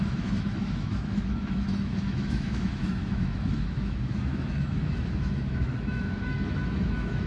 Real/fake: fake